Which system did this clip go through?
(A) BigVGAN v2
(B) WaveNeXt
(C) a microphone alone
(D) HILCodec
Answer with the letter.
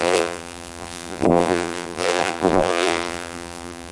A